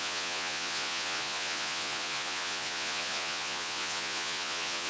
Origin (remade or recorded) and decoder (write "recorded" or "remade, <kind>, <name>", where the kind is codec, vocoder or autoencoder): remade, vocoder, Vocos